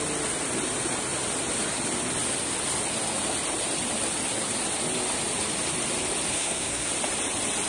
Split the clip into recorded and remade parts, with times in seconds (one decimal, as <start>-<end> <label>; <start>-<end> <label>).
0.0-6.3 recorded; 6.3-6.9 remade; 6.9-7.7 recorded